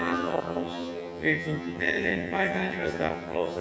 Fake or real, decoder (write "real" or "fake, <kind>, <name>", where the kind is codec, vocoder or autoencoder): fake, vocoder, HiFi-GAN